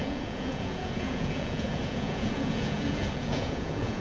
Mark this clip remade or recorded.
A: remade